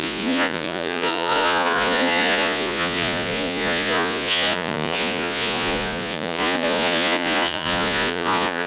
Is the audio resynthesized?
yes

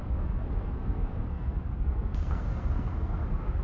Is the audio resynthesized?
yes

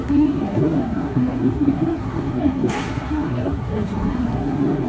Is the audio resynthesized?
yes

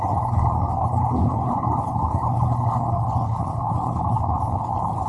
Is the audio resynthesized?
yes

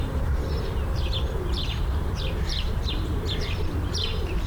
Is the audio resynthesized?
yes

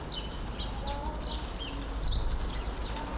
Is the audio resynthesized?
no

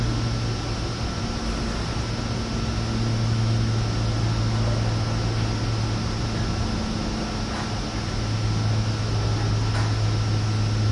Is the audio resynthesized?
no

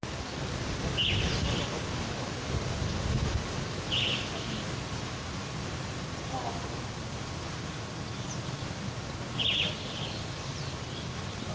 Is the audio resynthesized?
no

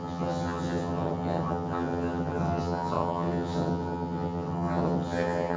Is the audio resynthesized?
yes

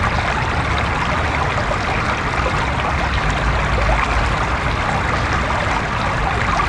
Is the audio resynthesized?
no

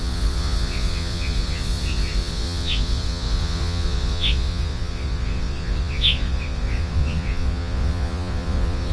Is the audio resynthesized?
yes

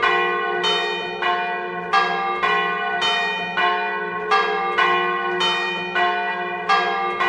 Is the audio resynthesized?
no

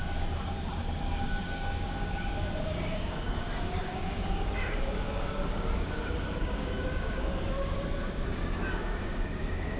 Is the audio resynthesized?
yes